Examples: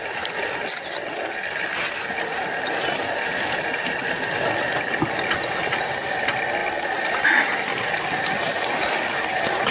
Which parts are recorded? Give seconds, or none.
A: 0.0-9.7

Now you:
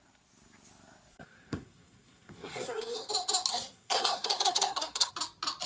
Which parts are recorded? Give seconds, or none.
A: 0.0-1.1; 3.1-3.5; 5.1-5.7

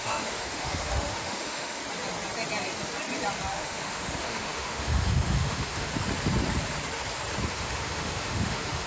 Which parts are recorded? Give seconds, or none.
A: 1.8-3.5; 5.9-7.5

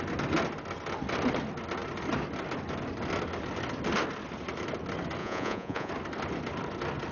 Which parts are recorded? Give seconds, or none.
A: 0.0-5.2; 5.9-7.1

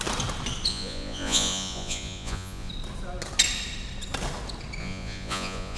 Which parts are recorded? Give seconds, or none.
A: 0.0-0.7; 2.7-4.8

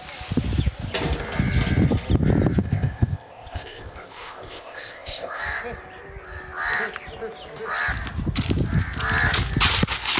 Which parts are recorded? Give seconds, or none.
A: 0.0-2.6; 5.4-10.2

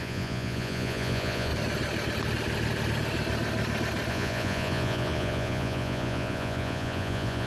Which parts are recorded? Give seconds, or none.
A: 1.5-4.1